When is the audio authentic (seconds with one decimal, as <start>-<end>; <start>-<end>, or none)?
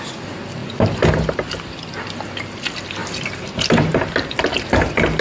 0.0-3.0; 3.6-5.2